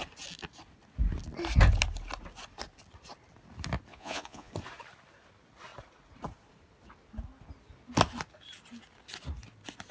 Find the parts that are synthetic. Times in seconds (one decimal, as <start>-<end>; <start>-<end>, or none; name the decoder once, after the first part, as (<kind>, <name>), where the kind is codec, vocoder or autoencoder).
3.9-4.5 (vocoder, Vocos)